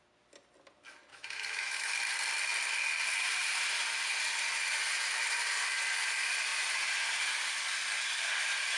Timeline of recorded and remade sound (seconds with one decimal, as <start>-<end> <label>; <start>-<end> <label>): 0.0-1.1 recorded; 1.1-1.9 remade; 1.9-8.8 recorded